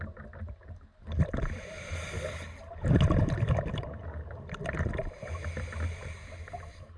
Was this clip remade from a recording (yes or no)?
no